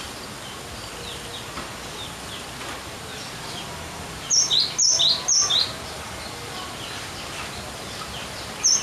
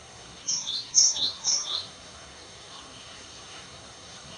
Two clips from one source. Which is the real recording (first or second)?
first